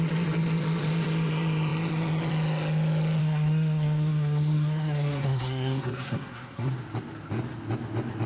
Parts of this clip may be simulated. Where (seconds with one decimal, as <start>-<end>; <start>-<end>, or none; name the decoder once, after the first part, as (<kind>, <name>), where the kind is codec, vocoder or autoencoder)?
3.2-6.7 (codec, SNAC)